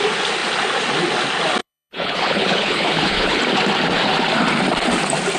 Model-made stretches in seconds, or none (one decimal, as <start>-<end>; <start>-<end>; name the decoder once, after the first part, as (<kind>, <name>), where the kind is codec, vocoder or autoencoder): 1.6-3.4 (codec, HILCodec)